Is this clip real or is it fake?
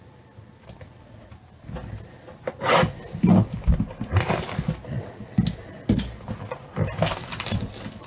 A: real